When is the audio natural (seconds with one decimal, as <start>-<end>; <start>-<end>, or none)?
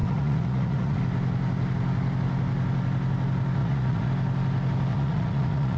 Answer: 1.0-3.6; 4.1-4.9